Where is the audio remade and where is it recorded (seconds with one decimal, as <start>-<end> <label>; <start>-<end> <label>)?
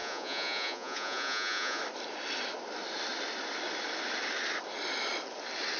0.0-1.8 remade; 1.8-5.8 recorded